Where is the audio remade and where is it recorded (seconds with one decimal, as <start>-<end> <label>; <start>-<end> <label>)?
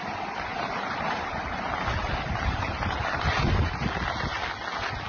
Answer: 0.0-0.5 recorded; 0.5-3.6 remade; 3.6-5.1 recorded